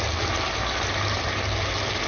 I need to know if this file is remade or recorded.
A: recorded